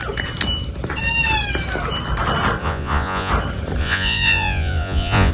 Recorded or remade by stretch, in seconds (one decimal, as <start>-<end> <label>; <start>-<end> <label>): 0.0-2.6 recorded; 2.6-3.3 remade; 3.3-3.8 recorded; 3.8-5.3 remade